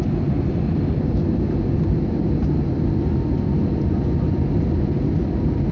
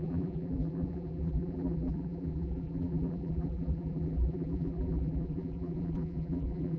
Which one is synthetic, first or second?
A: second